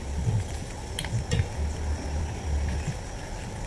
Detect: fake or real real